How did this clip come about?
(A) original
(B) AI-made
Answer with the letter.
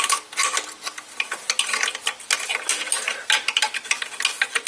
A